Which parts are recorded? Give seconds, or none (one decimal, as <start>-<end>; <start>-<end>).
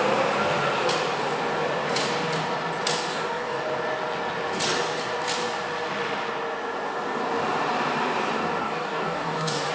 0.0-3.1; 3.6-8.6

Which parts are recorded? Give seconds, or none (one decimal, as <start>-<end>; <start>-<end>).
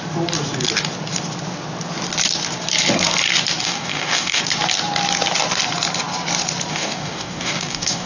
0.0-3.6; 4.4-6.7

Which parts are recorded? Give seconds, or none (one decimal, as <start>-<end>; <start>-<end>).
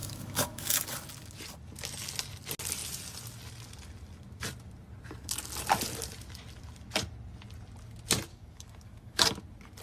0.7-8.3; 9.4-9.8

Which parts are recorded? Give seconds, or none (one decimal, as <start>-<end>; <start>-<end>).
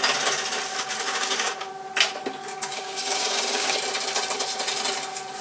0.0-0.7; 1.7-2.4; 3.8-5.4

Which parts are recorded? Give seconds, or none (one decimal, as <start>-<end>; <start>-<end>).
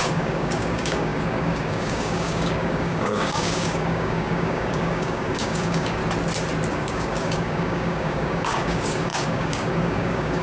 6.0-6.7